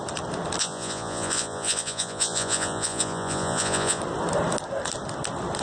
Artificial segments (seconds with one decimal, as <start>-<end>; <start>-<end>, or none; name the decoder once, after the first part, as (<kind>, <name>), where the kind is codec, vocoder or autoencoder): 0.6-4.0 (vocoder, Vocos)